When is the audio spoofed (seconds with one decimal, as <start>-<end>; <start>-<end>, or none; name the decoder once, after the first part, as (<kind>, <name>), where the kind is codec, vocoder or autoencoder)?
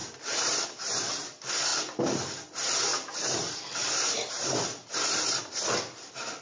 0.0-0.6 (vocoder, BigVGAN v2); 2.9-5.4